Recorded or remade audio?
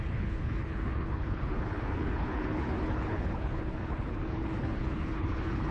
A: remade